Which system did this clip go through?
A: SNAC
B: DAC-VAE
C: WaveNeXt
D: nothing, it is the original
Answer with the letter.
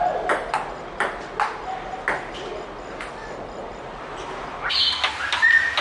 D